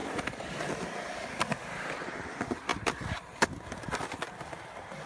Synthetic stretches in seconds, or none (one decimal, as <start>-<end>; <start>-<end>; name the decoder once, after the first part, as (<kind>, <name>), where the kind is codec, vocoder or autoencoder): 1.9-5.1 (vocoder, BigVGAN v2)